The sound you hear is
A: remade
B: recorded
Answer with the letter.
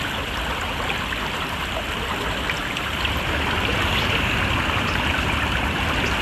B